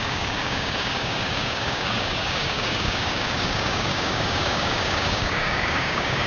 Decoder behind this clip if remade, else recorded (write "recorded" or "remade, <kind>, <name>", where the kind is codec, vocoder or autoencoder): remade, codec, DAC